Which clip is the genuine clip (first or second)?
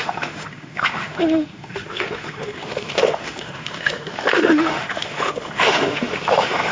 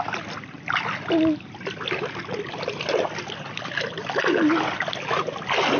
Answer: second